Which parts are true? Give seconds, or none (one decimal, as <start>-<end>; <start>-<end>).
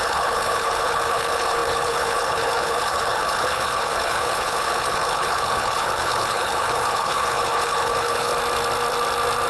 8.3-9.5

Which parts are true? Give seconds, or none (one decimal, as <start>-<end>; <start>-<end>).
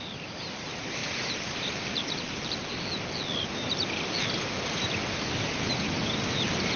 0.0-1.0; 2.7-6.8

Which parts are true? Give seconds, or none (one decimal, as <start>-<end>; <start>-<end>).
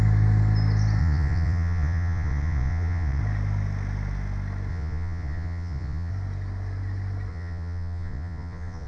0.0-1.0; 3.2-4.7; 6.1-7.3